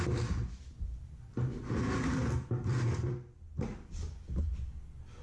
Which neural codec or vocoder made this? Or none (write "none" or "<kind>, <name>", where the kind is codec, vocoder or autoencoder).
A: none